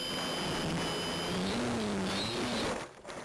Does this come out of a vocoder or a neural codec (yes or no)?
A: no